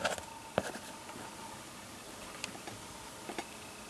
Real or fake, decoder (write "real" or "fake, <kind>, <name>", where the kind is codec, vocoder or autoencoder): real